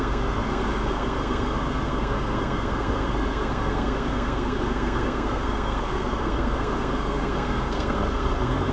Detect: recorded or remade remade